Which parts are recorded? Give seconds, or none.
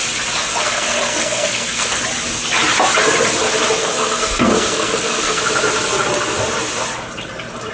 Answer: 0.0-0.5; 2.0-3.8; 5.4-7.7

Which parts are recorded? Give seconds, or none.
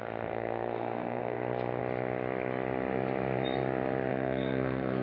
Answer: 1.8-4.1